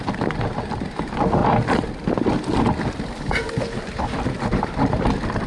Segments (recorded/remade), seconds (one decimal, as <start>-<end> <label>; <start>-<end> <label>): 0.0-1.4 remade; 1.4-4.0 recorded; 4.0-5.5 remade